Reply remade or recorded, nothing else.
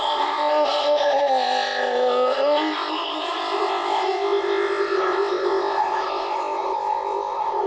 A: remade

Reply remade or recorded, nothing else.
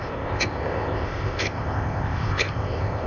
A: remade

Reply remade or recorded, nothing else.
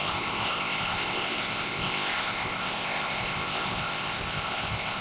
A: remade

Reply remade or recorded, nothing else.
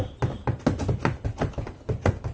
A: recorded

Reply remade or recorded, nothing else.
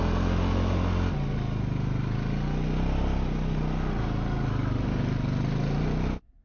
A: recorded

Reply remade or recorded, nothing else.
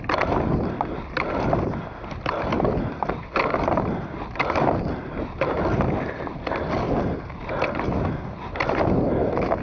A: recorded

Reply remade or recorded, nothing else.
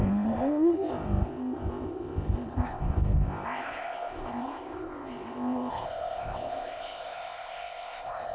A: remade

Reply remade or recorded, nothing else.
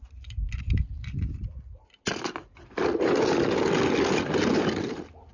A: recorded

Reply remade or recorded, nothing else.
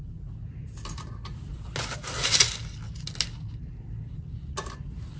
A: recorded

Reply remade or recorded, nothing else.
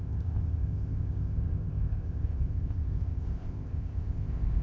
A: remade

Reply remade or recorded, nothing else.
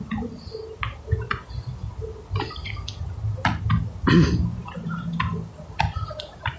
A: recorded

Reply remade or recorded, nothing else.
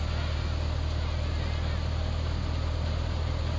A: recorded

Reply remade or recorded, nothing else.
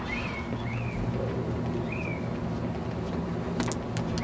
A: recorded